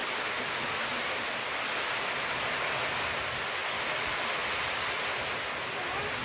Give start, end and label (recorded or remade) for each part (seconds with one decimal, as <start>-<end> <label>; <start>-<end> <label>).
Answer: 0.0-6.2 recorded